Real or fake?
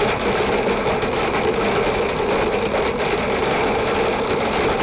real